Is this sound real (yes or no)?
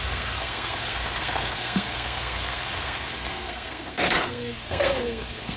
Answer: no